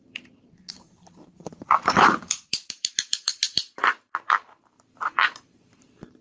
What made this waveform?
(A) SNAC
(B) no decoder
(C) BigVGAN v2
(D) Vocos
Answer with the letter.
C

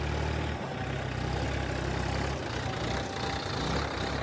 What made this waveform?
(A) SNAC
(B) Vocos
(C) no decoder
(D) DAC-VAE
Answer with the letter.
C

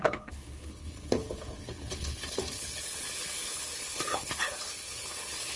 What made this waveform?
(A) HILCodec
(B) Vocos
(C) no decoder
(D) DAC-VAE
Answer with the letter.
A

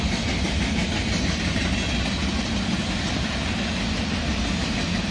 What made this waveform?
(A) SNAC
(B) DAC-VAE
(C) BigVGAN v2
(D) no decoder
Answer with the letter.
D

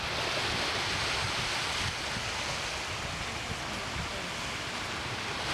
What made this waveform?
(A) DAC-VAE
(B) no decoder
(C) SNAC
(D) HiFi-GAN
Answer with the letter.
B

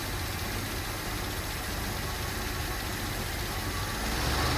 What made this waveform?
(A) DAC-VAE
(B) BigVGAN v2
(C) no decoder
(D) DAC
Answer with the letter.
C